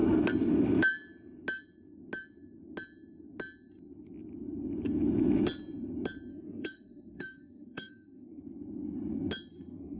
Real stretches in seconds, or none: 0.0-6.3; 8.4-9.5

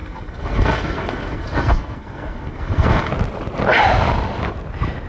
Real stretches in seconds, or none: 3.1-5.1

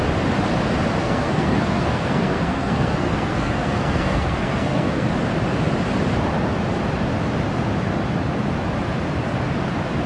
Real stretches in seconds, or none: 0.0-1.0; 5.1-10.1